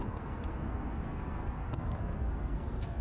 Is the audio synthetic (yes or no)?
yes